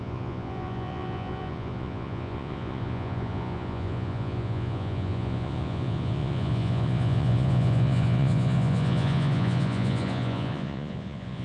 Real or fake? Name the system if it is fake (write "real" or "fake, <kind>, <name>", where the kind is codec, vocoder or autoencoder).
fake, vocoder, Vocos